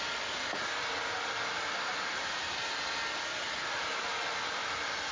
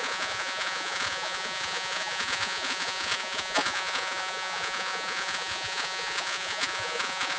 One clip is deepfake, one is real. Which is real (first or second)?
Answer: first